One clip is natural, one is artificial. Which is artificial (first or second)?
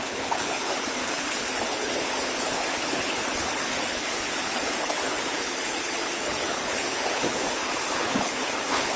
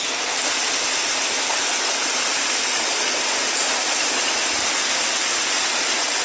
first